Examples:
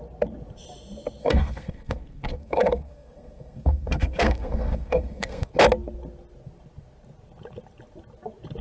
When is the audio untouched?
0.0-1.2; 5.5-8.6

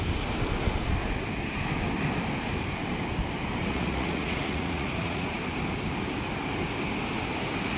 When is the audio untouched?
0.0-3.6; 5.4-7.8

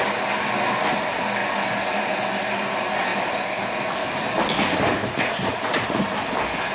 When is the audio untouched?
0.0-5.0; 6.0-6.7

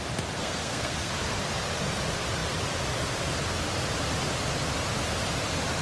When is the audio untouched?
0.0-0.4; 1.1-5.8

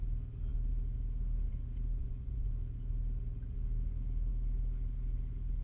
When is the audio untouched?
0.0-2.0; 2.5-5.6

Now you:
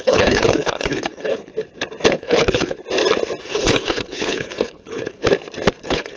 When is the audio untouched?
1.5-2.1; 2.8-3.4; 5.2-5.8

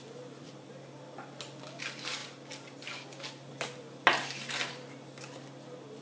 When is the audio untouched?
0.0-6.0